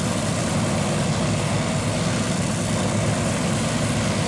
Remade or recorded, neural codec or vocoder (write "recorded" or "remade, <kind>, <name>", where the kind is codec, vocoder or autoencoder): recorded